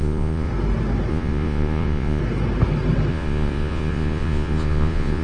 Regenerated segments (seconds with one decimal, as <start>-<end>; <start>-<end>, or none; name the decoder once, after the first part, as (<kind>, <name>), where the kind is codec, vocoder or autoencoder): 0.0-0.5 (vocoder, Vocos); 1.1-2.2; 3.1-5.2